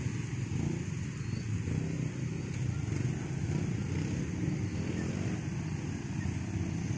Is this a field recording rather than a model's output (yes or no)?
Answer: yes